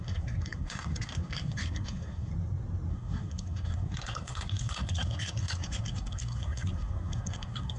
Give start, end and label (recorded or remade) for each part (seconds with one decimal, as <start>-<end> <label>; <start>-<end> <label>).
0.0-2.3 remade; 2.3-2.9 recorded; 2.9-7.8 remade